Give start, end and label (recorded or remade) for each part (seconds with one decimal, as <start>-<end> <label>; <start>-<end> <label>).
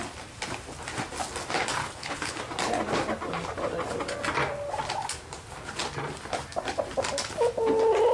0.0-1.8 recorded; 1.8-2.4 remade; 2.4-8.1 recorded